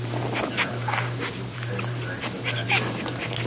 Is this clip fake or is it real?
real